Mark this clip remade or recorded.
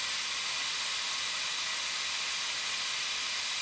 recorded